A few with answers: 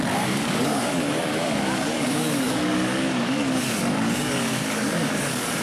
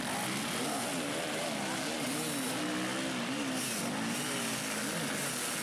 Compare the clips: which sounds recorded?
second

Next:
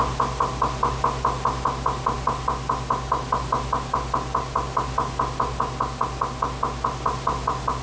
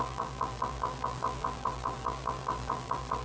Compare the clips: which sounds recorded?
first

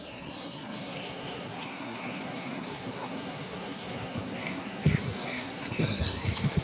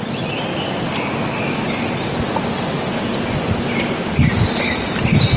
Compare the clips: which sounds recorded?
second